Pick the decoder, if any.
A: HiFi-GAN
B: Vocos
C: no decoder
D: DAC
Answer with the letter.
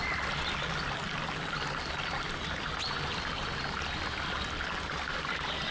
C